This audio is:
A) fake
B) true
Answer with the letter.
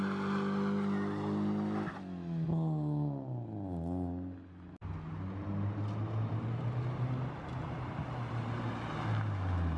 B